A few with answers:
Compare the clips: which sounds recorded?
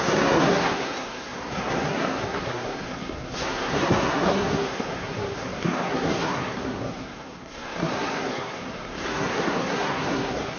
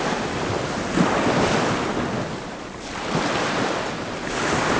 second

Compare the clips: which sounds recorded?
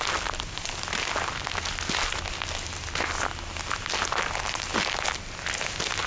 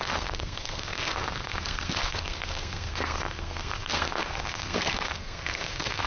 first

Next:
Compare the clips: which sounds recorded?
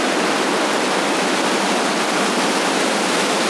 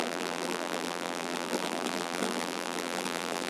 first